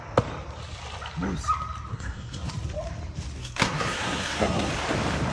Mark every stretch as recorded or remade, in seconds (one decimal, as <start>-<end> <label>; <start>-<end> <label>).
0.0-1.9 recorded; 1.9-2.5 remade; 2.5-3.4 recorded; 3.4-4.7 remade; 4.7-5.3 recorded